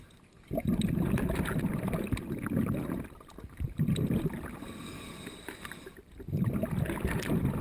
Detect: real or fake real